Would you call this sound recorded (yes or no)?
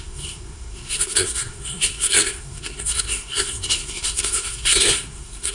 no